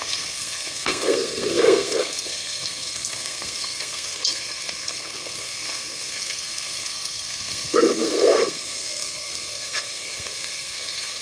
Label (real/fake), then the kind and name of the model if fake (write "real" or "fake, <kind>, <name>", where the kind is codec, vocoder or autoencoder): fake, codec, SNAC